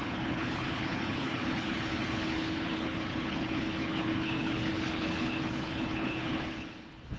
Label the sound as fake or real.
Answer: fake